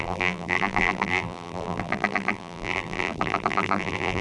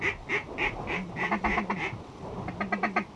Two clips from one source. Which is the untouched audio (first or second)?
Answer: second